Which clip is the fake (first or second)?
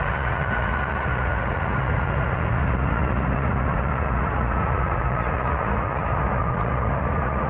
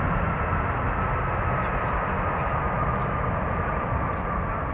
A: first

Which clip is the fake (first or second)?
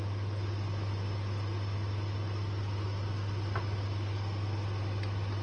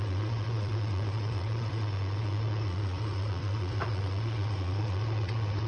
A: second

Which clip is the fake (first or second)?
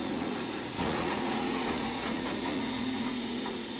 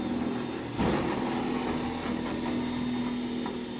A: first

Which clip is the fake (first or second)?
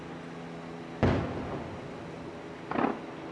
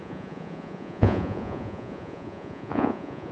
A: second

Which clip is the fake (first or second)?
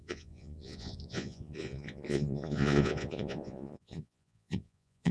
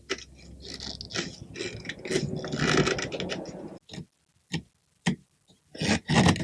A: first